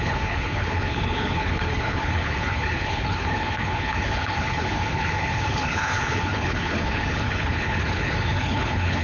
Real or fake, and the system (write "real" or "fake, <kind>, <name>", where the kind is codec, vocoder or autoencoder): fake, codec, HILCodec